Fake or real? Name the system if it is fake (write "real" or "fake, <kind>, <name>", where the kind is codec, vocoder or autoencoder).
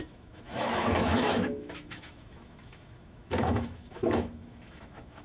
fake, autoencoder, DAC-VAE